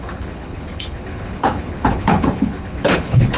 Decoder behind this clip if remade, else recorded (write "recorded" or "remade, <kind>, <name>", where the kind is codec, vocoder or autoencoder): remade, codec, HILCodec